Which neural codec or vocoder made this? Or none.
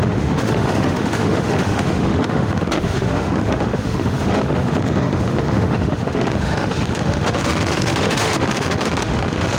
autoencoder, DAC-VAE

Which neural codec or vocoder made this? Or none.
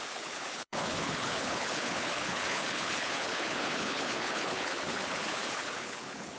codec, HILCodec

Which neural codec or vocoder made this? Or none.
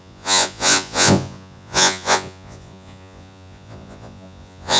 vocoder, Vocos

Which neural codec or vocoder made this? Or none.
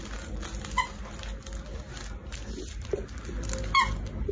none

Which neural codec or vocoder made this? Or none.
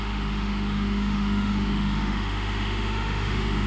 autoencoder, DAC-VAE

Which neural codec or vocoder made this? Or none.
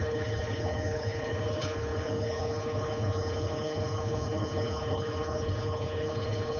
codec, HILCodec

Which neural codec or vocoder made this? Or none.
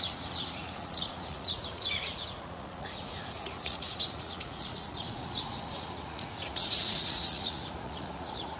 vocoder, Vocos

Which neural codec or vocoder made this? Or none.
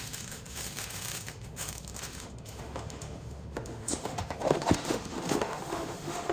autoencoder, DAC-VAE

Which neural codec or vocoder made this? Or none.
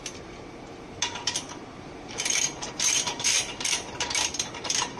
vocoder, BigVGAN v2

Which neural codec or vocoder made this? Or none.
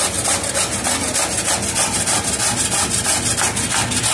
none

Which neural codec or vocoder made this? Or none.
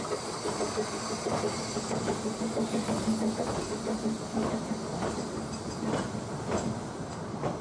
none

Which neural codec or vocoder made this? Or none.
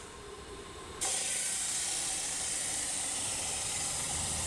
vocoder, BigVGAN v2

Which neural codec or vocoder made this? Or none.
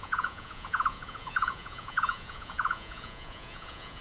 vocoder, Vocos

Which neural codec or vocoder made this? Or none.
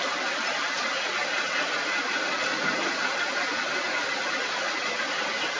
none